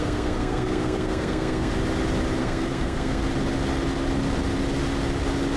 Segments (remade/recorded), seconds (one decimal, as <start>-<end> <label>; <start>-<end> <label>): 0.0-1.7 remade; 1.7-2.4 recorded; 2.4-3.2 remade; 3.2-5.6 recorded

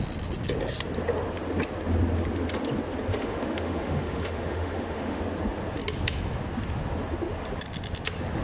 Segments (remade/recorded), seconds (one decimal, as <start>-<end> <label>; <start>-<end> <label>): 0.0-3.1 recorded; 3.1-5.2 remade; 5.2-8.4 recorded

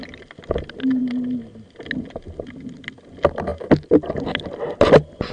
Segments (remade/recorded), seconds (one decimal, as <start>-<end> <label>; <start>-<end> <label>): 0.0-5.3 recorded

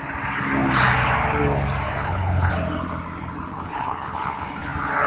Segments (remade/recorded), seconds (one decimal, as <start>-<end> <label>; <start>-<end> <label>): 0.0-1.9 recorded; 1.9-2.5 remade; 2.5-3.5 recorded; 3.5-4.5 remade; 4.5-5.1 recorded

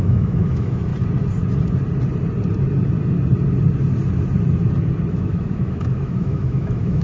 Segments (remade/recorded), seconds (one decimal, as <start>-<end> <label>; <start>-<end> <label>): 0.0-0.9 remade; 0.9-5.1 recorded; 5.1-7.0 remade

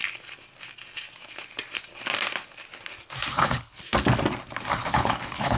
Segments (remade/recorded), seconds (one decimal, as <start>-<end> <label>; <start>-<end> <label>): 0.0-3.3 recorded; 3.3-3.8 remade; 3.8-4.7 recorded; 4.7-5.6 remade

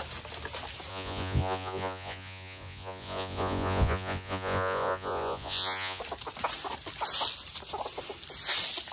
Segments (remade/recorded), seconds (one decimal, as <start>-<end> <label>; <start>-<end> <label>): 0.0-0.9 recorded; 0.9-6.0 remade; 6.0-8.9 recorded